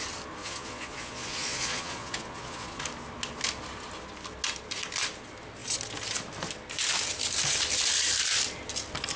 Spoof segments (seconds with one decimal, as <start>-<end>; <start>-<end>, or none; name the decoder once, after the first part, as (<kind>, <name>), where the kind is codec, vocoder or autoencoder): 0.4-2.8 (vocoder, Vocos)